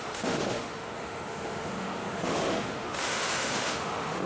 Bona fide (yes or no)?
no